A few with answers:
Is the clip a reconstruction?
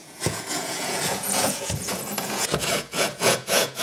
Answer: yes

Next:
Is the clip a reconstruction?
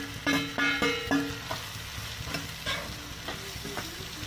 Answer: no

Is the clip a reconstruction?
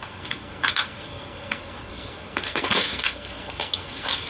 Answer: yes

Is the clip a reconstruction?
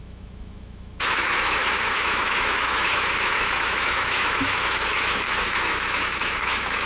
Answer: yes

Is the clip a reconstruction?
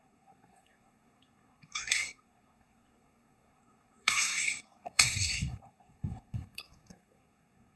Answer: yes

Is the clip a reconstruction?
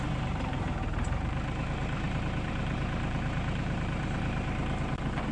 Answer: yes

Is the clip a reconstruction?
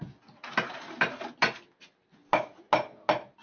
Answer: no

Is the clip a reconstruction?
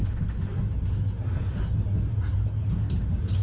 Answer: no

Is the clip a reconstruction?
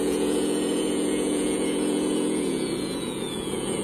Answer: yes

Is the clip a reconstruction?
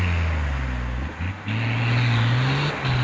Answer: no